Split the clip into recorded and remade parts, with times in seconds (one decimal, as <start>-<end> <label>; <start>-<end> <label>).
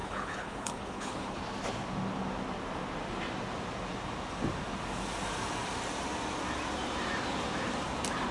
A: 0.0-1.4 remade; 1.4-8.3 recorded